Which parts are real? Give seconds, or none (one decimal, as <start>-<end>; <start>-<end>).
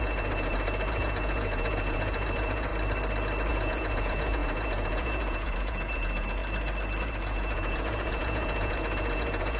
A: 2.7-3.5; 6.4-7.0